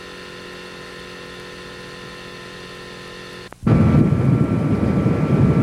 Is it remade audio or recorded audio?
recorded